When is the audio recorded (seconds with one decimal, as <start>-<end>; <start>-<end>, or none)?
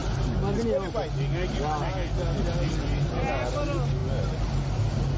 0.0-5.2